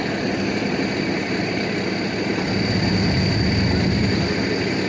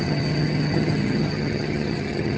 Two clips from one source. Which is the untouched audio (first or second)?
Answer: first